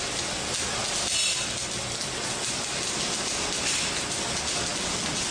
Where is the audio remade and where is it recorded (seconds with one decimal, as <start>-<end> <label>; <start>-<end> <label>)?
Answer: 0.0-5.3 recorded